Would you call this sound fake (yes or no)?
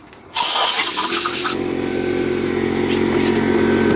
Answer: no